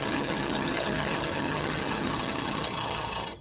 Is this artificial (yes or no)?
yes